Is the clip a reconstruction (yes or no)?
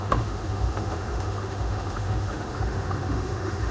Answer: yes